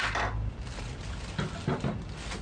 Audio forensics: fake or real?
real